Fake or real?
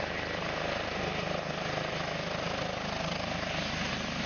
real